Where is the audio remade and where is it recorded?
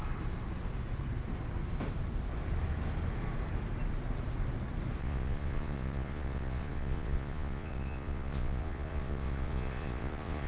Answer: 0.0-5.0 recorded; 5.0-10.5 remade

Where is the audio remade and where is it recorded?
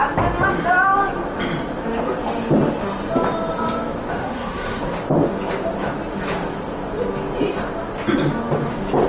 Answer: 0.0-4.2 recorded; 4.2-4.8 remade; 4.8-9.1 recorded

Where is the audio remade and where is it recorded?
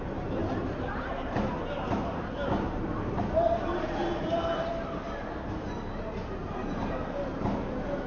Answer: 0.0-0.4 recorded; 0.4-4.7 remade; 4.7-8.1 recorded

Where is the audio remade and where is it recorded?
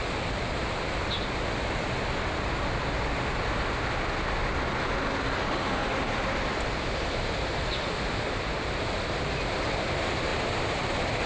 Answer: 0.0-11.3 recorded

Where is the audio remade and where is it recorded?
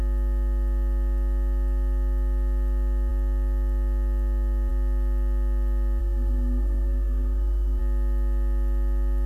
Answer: 0.0-6.0 recorded; 6.0-7.8 remade; 7.8-9.3 recorded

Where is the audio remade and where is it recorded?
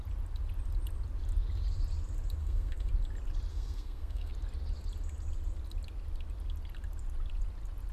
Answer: 0.0-2.4 recorded; 2.4-2.9 remade; 2.9-3.5 recorded; 3.5-4.3 remade; 4.3-7.9 recorded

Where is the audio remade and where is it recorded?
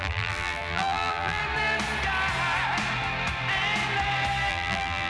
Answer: 0.0-1.4 remade; 1.4-4.5 recorded; 4.5-5.1 remade